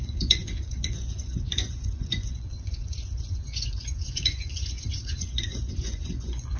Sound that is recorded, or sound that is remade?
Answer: remade